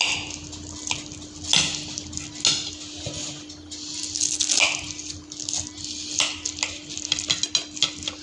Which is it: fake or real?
real